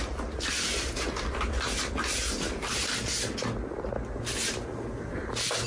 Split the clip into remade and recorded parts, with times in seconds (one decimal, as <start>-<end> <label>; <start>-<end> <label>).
0.0-5.7 recorded